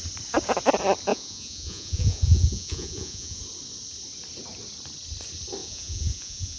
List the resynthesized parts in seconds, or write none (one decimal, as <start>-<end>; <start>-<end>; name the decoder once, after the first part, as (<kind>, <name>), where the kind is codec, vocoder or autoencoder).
1.1-3.4 (vocoder, Vocos); 5.6-6.6